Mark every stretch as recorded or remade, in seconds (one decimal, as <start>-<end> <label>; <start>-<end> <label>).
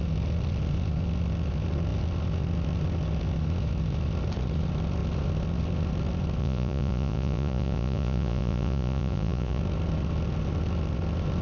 0.0-6.4 recorded; 6.4-9.6 remade; 9.6-11.4 recorded